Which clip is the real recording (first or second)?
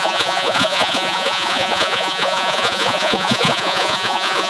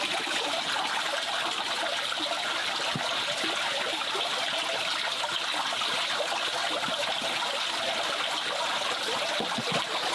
second